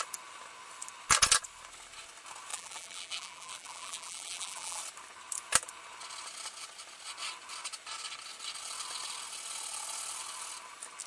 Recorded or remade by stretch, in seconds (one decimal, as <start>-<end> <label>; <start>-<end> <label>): 0.0-2.5 recorded; 2.5-4.8 remade; 4.8-11.1 recorded